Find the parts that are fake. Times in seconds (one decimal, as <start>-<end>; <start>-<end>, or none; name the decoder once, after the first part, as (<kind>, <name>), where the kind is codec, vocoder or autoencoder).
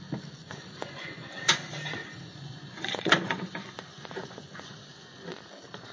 0.4-1.4 (vocoder, Vocos); 2.0-5.5